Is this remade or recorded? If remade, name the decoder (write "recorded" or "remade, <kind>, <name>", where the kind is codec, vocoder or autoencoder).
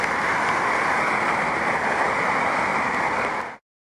recorded